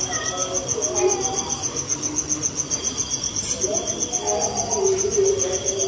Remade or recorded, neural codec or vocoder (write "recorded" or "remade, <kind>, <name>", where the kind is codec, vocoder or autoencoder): recorded